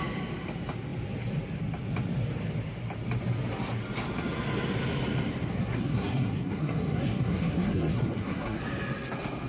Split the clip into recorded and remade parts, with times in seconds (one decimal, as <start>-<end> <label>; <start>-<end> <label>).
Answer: 0.0-5.5 recorded; 5.5-8.6 remade; 8.6-9.5 recorded